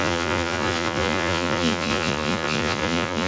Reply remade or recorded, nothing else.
remade